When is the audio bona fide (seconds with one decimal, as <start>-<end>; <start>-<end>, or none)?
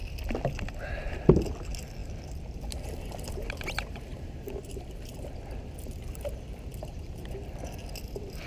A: 0.0-4.1; 5.1-6.7; 7.8-8.5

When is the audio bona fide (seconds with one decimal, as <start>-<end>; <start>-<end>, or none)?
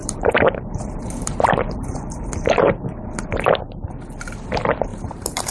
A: 3.3-4.9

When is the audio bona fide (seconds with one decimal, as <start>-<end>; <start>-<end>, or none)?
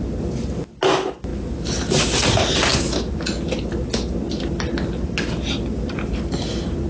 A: 0.0-6.9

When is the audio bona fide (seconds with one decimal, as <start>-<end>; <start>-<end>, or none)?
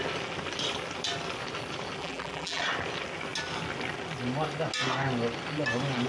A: 0.0-2.0; 2.6-6.1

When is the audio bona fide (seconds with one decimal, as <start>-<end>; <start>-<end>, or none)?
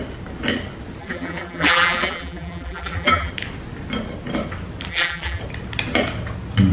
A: 0.0-1.0; 3.3-4.9; 5.4-6.7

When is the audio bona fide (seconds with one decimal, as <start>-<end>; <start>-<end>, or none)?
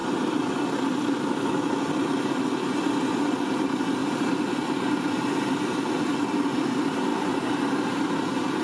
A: 0.0-8.6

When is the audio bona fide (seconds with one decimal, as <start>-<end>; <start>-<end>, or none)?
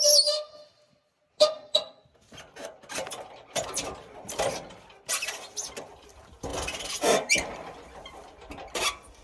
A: 0.0-9.2